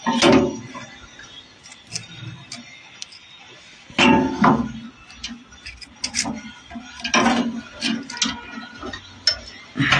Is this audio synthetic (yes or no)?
no